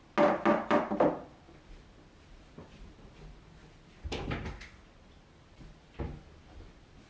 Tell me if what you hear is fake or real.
real